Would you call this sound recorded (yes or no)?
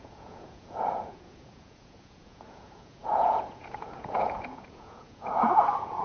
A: no